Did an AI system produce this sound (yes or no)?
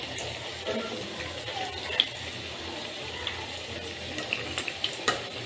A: no